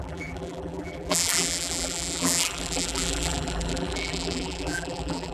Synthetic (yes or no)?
yes